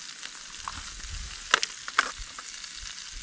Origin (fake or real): real